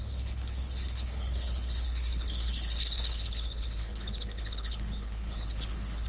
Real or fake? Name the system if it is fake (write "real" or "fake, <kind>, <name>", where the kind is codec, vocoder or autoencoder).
fake, codec, HILCodec